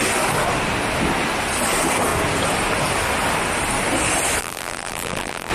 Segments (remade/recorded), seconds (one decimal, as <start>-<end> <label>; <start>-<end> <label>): 0.0-4.4 recorded; 4.4-5.5 remade